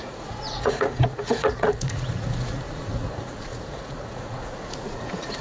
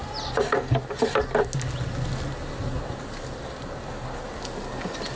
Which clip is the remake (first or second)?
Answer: first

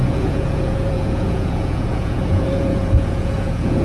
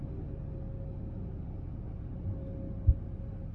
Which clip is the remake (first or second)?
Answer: first